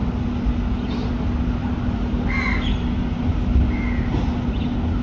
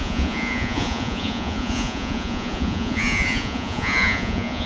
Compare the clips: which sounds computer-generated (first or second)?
second